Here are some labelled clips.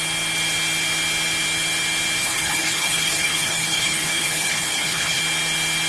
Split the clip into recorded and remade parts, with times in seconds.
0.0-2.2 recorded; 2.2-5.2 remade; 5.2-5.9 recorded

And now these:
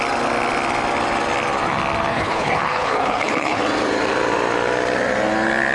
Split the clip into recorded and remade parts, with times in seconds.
0.0-2.1 recorded; 2.1-3.6 remade; 3.6-5.7 recorded